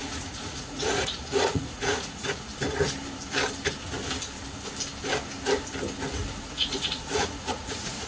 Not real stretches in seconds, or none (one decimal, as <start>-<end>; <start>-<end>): 0.0-2.5; 6.4-8.1